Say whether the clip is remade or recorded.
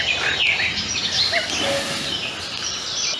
recorded